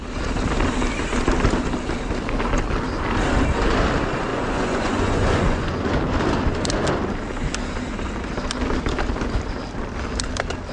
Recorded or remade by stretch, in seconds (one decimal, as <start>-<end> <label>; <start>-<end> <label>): 0.0-4.3 recorded; 4.3-5.9 remade; 5.9-10.7 recorded